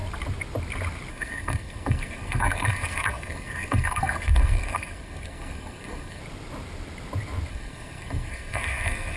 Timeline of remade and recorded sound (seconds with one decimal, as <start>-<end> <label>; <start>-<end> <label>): 0.0-1.1 recorded; 1.1-6.2 remade; 6.2-7.5 recorded; 7.5-9.2 remade

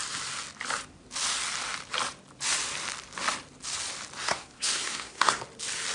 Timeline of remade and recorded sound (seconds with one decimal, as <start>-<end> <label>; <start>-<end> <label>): 0.0-4.2 recorded; 4.2-5.4 remade; 5.4-5.9 recorded

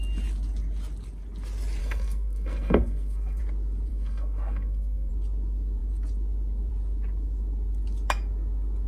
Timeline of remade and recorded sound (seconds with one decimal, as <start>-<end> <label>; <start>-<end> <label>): 0.0-1.8 recorded; 1.8-3.4 remade; 3.4-3.9 recorded; 3.9-5.1 remade; 5.1-8.9 recorded

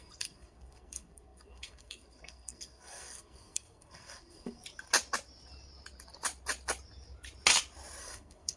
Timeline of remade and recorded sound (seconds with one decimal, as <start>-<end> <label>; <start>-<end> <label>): 0.0-4.6 remade; 4.6-8.0 recorded; 8.0-8.6 remade

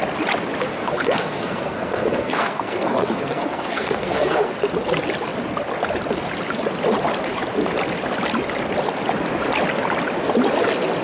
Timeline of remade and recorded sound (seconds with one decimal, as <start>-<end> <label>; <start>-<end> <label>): 0.0-0.7 recorded; 0.7-4.5 remade; 4.5-11.0 recorded

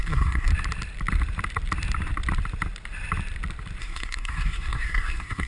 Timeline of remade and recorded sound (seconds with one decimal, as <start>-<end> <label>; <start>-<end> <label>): 0.0-0.5 remade; 0.5-3.8 recorded; 3.8-5.5 remade

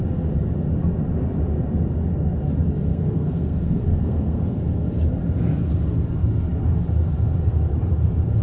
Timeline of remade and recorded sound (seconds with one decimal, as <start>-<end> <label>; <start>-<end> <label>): 0.0-2.9 recorded; 2.9-4.6 remade; 4.6-8.4 recorded

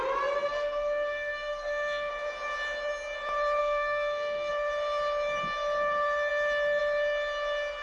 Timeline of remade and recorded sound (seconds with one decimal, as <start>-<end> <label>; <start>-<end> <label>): 0.0-0.4 recorded; 0.4-2.1 remade; 2.1-3.6 recorded; 3.6-4.5 remade; 4.5-7.8 recorded